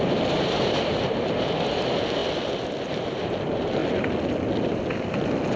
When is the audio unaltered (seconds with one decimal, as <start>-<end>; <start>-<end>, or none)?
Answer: 2.2-2.9; 3.8-5.6